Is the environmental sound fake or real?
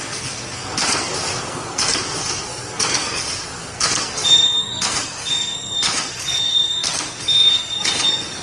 fake